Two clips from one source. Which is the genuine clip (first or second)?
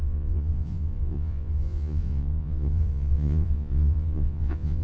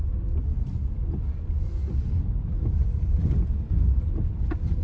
second